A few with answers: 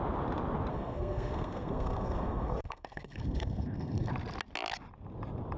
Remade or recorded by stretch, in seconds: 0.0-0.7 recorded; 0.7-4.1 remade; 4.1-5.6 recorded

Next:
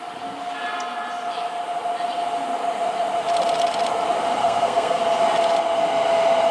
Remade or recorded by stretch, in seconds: 0.0-4.4 recorded; 4.4-5.0 remade; 5.0-6.5 recorded

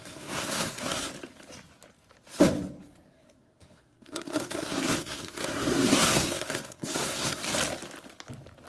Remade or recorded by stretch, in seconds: 0.0-1.1 remade; 1.1-3.1 recorded; 3.1-7.4 remade; 7.4-8.7 recorded